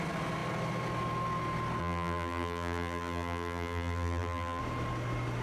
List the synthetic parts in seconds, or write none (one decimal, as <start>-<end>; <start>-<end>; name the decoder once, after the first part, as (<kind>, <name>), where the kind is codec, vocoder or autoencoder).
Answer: 1.8-4.6 (vocoder, BigVGAN v2)